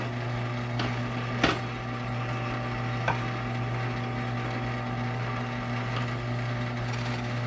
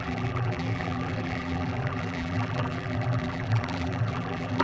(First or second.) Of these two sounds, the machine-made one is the second